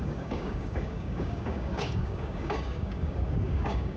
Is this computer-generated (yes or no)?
yes